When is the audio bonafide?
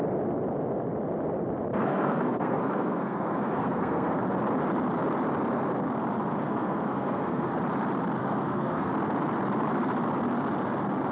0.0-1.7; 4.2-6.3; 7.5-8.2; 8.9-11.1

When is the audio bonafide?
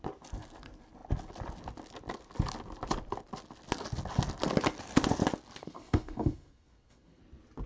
0.0-5.6; 7.2-7.7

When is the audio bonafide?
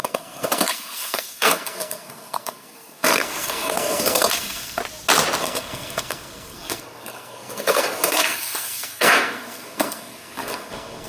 4.8-5.4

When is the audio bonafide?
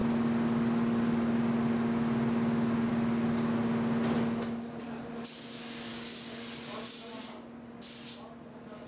0.0-8.9